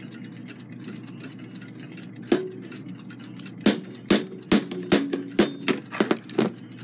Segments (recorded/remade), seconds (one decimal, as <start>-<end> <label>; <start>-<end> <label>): 0.0-6.8 recorded